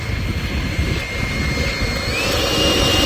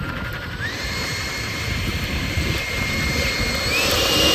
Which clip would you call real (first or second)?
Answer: first